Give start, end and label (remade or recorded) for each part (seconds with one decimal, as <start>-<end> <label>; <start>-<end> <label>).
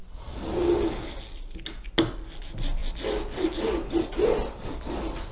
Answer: 0.0-5.3 recorded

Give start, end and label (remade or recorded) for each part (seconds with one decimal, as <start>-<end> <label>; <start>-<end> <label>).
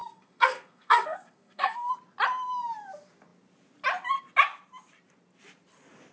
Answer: 0.0-1.9 remade; 1.9-6.1 recorded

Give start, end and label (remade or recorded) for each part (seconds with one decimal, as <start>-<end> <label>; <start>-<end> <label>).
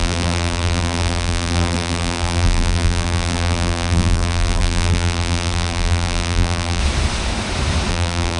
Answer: 0.0-6.8 remade; 6.8-7.9 recorded; 7.9-8.4 remade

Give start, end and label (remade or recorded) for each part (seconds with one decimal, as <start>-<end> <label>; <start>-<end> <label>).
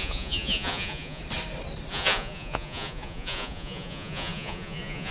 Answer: 0.0-1.2 remade; 1.2-1.9 recorded; 1.9-5.1 remade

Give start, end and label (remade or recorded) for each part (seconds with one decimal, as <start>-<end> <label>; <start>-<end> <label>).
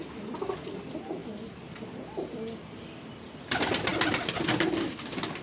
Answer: 0.0-5.4 recorded